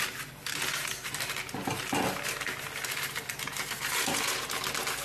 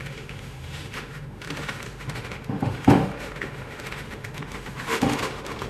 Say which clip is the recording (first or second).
first